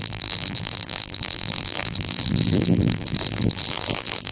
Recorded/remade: remade